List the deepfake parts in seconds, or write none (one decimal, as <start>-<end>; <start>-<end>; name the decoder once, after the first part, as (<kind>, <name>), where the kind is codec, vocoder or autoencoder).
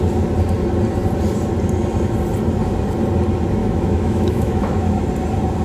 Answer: 3.6-5.0 (autoencoder, DAC-VAE)